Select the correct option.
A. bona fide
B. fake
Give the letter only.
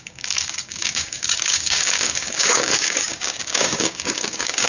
B